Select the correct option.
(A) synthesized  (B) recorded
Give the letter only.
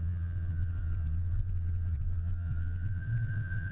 A